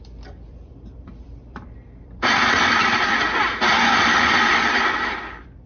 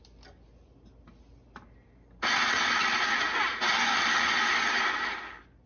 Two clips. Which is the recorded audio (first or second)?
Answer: second